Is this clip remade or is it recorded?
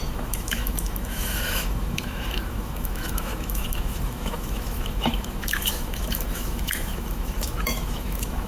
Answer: remade